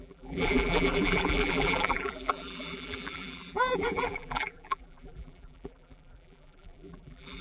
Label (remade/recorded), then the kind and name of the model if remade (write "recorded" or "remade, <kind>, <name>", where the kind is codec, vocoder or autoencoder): remade, vocoder, BigVGAN v2